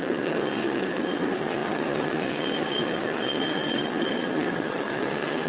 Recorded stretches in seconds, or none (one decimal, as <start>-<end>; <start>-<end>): none